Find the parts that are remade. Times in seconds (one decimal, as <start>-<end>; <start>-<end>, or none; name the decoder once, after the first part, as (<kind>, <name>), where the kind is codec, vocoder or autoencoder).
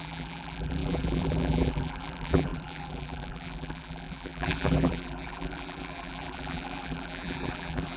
0.0-8.0 (vocoder, BigVGAN v2)